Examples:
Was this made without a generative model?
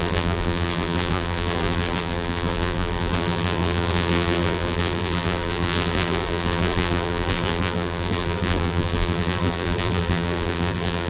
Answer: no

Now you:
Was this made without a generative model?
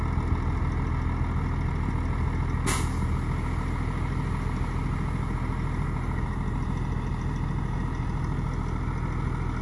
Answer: yes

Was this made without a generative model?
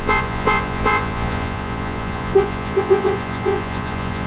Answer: no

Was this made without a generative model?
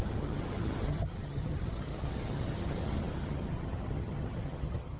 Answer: no